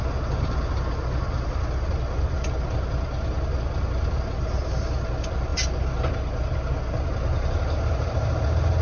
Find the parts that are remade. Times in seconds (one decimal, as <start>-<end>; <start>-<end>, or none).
none